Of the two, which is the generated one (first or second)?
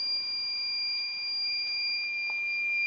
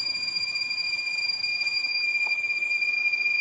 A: second